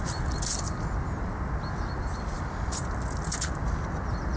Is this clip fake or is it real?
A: real